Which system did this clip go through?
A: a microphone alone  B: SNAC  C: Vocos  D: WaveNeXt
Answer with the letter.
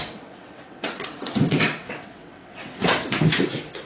D